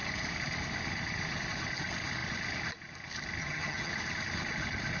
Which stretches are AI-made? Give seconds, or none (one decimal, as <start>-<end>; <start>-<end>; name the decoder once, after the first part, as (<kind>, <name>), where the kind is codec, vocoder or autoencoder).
3.4-3.9 (vocoder, HiFi-GAN)